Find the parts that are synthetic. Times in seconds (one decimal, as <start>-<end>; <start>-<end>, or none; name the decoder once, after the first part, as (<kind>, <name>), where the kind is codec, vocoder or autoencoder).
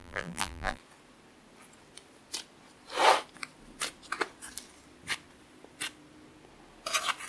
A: 0.0-0.8 (vocoder, BigVGAN v2)